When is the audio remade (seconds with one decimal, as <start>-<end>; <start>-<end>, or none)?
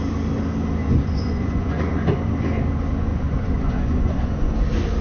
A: 0.8-2.1; 3.1-4.5